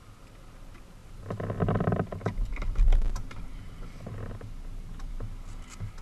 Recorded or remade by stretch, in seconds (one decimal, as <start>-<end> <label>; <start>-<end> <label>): 0.0-1.0 recorded; 1.0-1.7 remade; 1.7-6.0 recorded